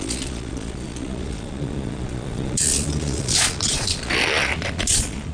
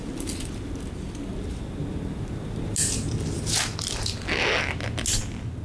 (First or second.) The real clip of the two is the second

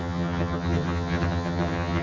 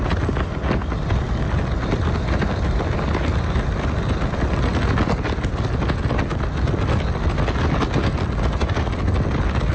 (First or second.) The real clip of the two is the second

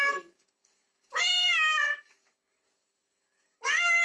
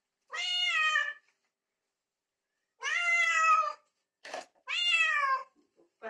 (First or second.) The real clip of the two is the second